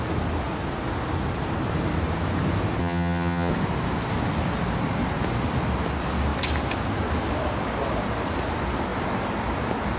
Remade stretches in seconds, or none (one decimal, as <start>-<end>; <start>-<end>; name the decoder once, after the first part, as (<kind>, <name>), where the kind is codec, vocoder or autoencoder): 2.8-3.5 (vocoder, HiFi-GAN)